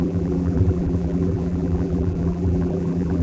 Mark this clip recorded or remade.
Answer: remade